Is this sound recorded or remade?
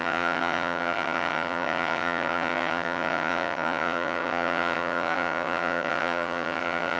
remade